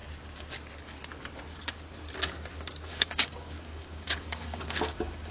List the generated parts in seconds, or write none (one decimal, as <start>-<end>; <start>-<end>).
2.9-5.3